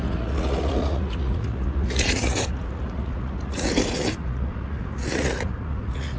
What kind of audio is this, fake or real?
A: fake